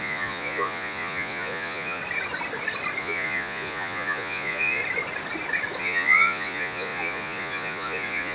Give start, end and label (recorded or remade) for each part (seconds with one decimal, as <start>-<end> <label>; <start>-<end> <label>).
0.0-2.0 remade; 2.0-3.0 recorded; 3.0-4.8 remade; 4.8-5.8 recorded; 5.8-8.3 remade